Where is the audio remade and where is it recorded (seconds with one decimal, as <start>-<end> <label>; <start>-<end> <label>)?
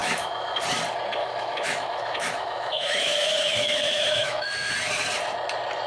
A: 0.0-0.6 remade; 0.6-1.2 recorded; 1.2-4.7 remade; 4.7-5.9 recorded